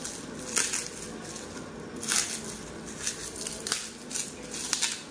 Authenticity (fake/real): real